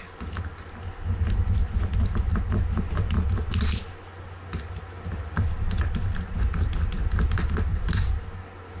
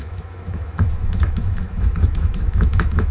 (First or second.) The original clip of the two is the first